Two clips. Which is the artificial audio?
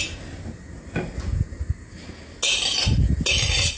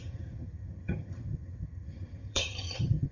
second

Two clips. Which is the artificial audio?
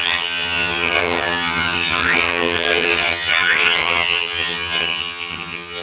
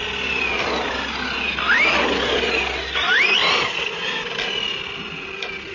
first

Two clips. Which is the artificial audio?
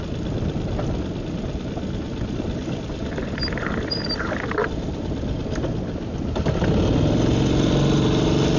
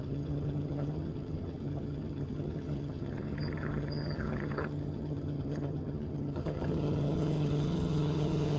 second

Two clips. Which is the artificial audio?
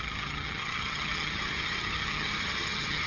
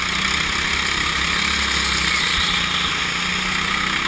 first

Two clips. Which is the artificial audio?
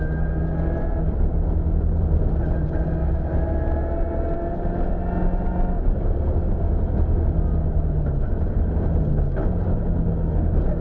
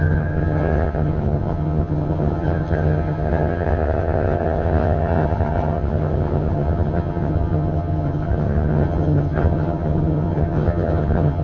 second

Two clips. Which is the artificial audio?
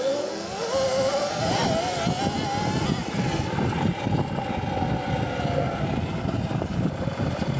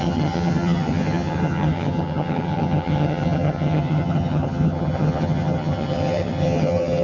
second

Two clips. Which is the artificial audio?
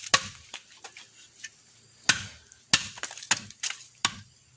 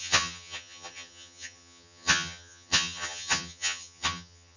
second